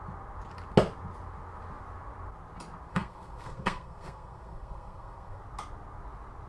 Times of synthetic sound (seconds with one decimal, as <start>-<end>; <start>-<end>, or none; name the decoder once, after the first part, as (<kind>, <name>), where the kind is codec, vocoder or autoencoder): 2.9-5.4 (codec, SNAC)